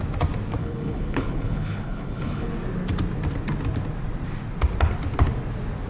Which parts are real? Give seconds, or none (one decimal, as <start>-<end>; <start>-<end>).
0.0-0.6; 2.5-5.9